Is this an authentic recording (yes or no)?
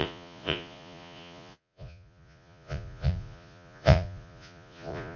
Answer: no